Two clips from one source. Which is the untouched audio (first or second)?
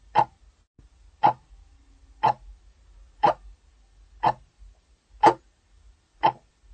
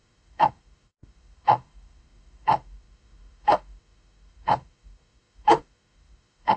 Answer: first